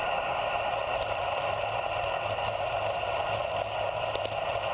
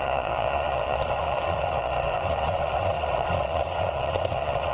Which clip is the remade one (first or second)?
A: second